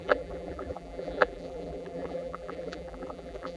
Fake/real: fake